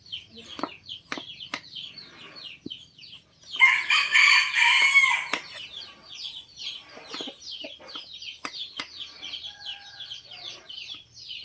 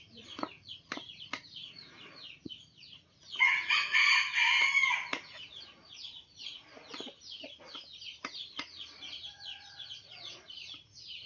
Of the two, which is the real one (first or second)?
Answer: first